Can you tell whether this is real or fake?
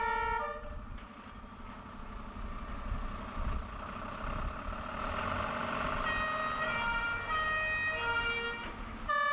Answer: real